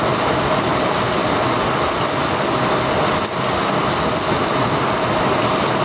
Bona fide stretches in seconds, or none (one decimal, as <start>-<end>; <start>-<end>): 0.0-5.8